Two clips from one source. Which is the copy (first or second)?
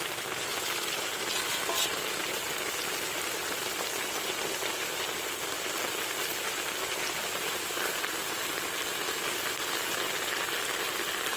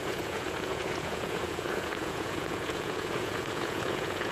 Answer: second